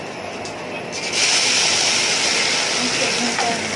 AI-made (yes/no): no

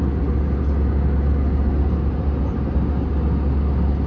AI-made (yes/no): no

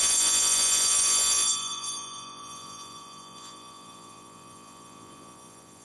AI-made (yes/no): yes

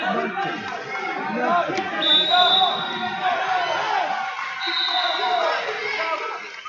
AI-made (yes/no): no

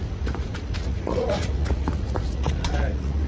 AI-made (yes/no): yes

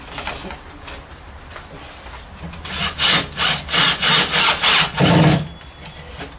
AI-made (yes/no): no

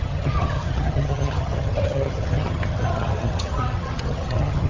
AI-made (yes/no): yes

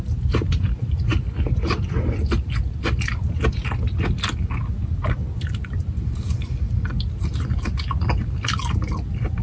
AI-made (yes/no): no